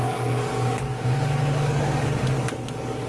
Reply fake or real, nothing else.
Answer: fake